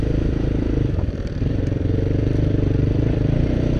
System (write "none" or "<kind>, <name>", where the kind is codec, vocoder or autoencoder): vocoder, BigVGAN v2